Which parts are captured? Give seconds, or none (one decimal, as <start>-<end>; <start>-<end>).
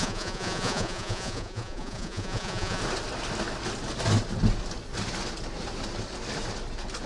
2.8-7.1